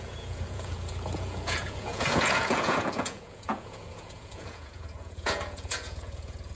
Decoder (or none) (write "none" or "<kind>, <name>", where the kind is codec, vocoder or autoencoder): vocoder, Vocos